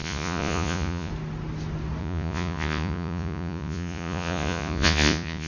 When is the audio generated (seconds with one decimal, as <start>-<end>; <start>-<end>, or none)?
0.0-1.1; 2.0-5.5